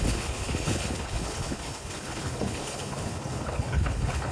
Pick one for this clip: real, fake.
fake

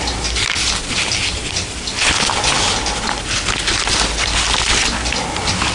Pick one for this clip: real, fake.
real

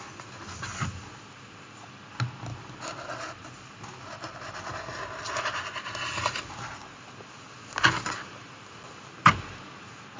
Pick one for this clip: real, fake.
real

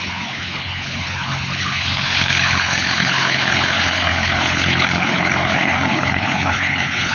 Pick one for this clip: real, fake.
fake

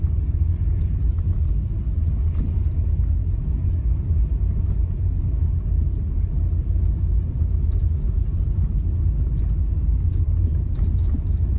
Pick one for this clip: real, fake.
real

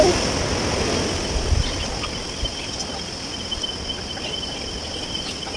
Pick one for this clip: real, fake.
real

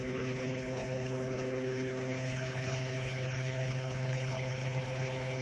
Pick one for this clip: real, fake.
fake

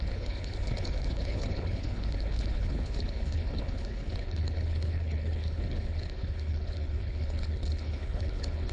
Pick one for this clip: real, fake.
fake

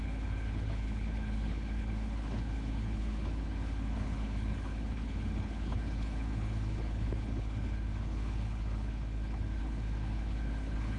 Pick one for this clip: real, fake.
fake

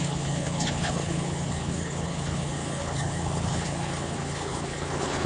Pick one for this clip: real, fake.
fake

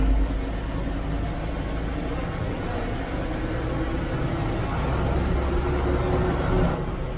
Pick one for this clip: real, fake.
real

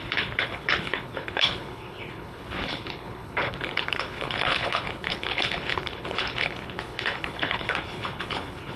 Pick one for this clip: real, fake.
fake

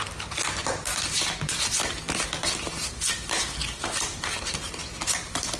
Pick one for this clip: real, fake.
real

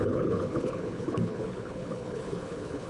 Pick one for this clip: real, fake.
fake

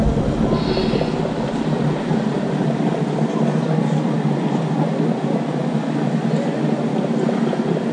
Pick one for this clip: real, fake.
real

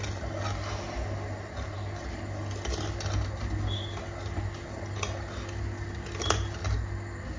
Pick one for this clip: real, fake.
real